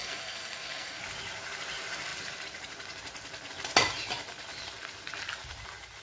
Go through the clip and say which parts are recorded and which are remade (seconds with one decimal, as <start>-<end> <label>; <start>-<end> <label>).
0.0-1.0 remade; 1.0-6.0 recorded

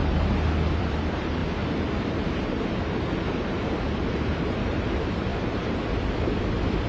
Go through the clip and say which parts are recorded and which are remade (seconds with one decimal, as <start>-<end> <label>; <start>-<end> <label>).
0.0-0.8 recorded; 0.8-1.4 remade; 1.4-4.4 recorded; 4.4-5.3 remade; 5.3-6.9 recorded

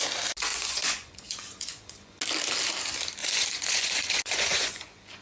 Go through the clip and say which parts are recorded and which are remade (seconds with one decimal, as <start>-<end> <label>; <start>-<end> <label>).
0.0-0.5 recorded; 0.5-2.2 remade; 2.2-3.2 recorded; 3.2-5.2 remade

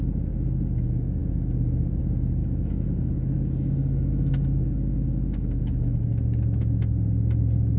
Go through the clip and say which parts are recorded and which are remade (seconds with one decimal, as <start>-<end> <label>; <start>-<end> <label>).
0.0-2.4 recorded; 2.4-6.0 remade; 6.0-7.8 recorded

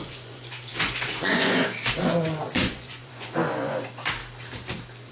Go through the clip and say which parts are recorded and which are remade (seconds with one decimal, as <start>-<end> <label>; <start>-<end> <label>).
0.0-4.2 remade; 4.2-5.1 recorded

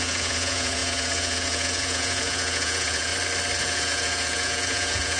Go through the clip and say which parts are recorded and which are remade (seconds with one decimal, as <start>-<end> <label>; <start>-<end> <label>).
0.0-3.1 remade; 3.1-3.6 recorded; 3.6-5.2 remade

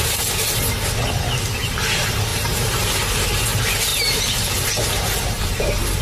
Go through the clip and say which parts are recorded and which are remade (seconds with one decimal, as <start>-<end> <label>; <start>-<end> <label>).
0.0-2.3 recorded; 2.3-3.0 remade; 3.0-3.9 recorded; 3.9-5.5 remade; 5.5-6.0 recorded

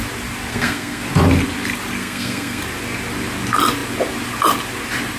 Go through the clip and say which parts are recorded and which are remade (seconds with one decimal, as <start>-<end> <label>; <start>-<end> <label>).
0.0-0.5 recorded; 0.5-1.0 remade; 1.0-2.0 recorded; 2.0-2.6 remade; 2.6-5.2 recorded